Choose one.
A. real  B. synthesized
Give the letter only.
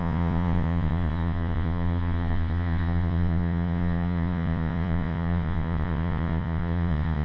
B